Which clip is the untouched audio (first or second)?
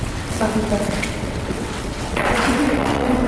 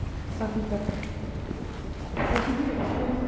second